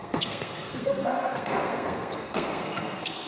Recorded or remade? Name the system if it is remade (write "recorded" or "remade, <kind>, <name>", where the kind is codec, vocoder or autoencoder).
remade, codec, SNAC